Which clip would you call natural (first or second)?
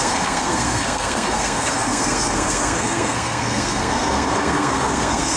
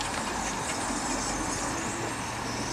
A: second